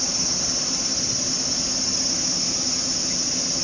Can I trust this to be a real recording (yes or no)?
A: yes